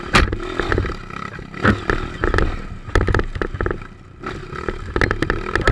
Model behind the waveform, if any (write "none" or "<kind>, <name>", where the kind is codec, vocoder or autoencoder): none